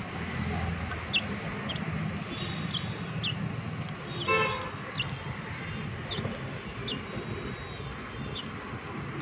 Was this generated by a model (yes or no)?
no